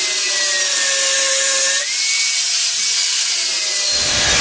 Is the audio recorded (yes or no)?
yes